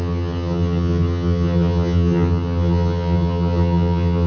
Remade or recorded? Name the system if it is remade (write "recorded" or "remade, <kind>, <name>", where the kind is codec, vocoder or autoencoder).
remade, vocoder, HiFi-GAN